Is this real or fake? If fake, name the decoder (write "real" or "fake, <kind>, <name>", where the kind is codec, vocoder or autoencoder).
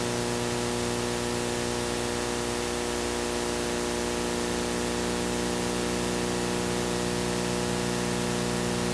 real